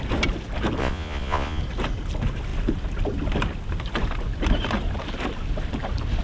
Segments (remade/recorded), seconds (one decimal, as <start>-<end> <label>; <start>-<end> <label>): 0.0-0.8 recorded; 0.8-1.6 remade; 1.6-6.2 recorded

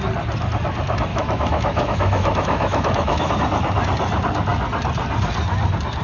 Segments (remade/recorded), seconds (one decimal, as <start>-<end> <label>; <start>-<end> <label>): 0.0-1.1 recorded; 1.1-3.3 remade; 3.3-6.0 recorded

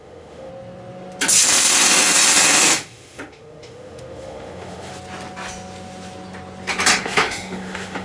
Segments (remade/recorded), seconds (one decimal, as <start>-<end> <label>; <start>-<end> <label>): 0.0-0.5 remade; 0.5-2.6 recorded; 2.6-4.9 remade; 4.9-7.0 recorded; 7.0-8.0 remade

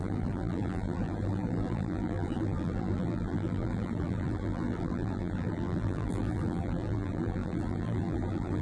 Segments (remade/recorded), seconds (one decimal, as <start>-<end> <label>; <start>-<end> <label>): 0.0-8.6 remade

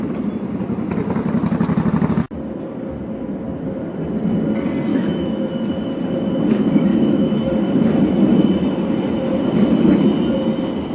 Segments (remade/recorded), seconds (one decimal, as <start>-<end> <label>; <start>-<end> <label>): 0.0-4.9 recorded; 4.9-5.5 remade; 5.5-6.9 recorded; 6.9-7.5 remade; 7.5-10.9 recorded

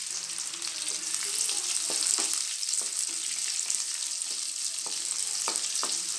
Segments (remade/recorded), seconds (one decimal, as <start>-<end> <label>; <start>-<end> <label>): 0.0-6.2 recorded

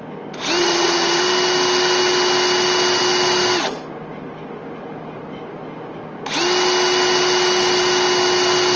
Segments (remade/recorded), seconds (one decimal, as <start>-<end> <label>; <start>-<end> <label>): 0.0-0.6 recorded; 0.6-1.2 remade; 1.2-8.8 recorded